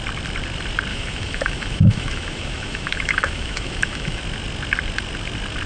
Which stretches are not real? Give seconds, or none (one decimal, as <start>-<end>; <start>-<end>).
0.9-4.2